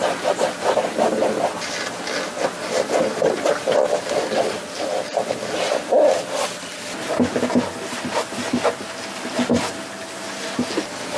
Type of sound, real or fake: real